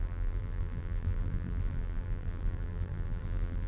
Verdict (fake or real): fake